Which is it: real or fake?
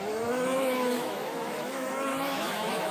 fake